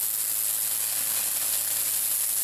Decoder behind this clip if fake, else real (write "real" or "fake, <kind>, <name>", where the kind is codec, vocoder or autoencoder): real